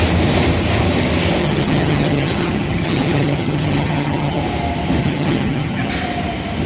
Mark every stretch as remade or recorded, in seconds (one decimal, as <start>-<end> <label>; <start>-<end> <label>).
0.0-1.4 recorded; 1.4-4.4 remade; 4.4-5.0 recorded; 5.0-5.9 remade; 5.9-6.7 recorded